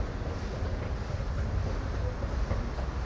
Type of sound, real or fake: real